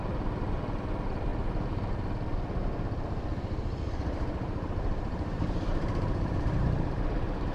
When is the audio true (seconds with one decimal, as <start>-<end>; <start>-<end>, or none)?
0.0-0.8; 1.3-3.9